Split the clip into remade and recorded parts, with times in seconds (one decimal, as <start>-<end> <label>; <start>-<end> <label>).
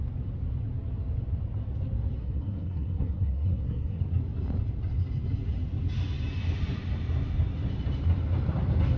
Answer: 0.0-2.2 recorded; 2.2-4.0 remade; 4.0-9.0 recorded